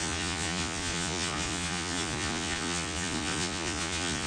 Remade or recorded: remade